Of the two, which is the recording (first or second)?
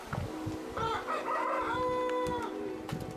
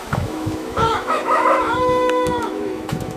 first